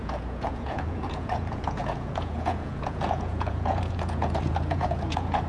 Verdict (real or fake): fake